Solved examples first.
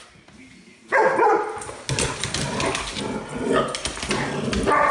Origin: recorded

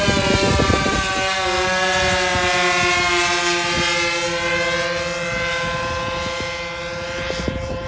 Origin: recorded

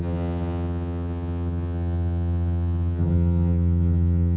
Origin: remade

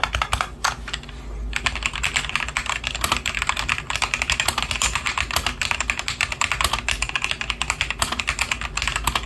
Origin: recorded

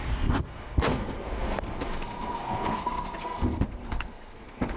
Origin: remade